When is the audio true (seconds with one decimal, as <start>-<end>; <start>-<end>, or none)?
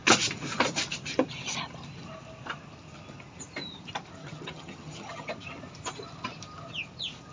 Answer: 0.0-4.2; 5.3-7.3